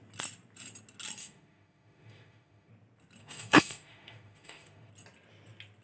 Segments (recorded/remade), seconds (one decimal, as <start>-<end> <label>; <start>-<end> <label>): 0.0-1.2 recorded; 1.2-2.7 remade; 2.7-3.2 recorded; 3.2-4.9 remade; 4.9-5.8 recorded